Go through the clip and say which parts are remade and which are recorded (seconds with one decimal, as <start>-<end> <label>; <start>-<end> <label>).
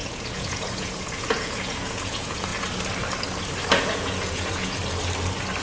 0.0-2.5 remade; 2.5-3.7 recorded; 3.7-4.8 remade; 4.8-5.6 recorded